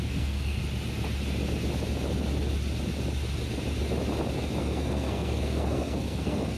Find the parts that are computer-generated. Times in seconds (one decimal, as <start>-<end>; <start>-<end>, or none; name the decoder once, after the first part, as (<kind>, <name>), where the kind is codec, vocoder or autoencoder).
0.0-0.6 (codec, SNAC); 4.6-6.6